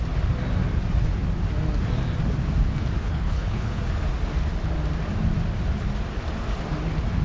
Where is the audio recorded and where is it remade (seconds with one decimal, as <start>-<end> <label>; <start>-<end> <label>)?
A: 0.0-3.0 recorded; 3.0-3.8 remade; 3.8-7.2 recorded